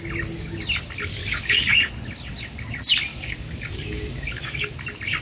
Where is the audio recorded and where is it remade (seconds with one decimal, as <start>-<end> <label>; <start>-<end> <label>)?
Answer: 0.0-1.2 recorded; 1.2-1.9 remade; 1.9-3.1 recorded; 3.1-4.7 remade; 4.7-5.2 recorded